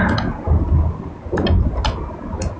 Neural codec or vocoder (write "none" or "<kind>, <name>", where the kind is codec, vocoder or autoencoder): none